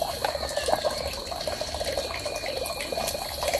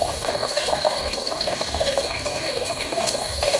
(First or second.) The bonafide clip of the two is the first